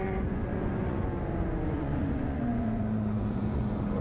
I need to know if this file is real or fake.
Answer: fake